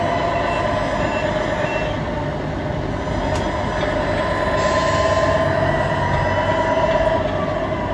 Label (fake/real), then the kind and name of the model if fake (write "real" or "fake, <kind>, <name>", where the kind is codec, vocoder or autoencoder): real